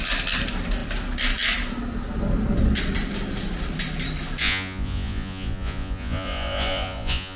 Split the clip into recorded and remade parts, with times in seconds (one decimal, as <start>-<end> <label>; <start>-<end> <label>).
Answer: 0.0-4.4 recorded; 4.4-7.4 remade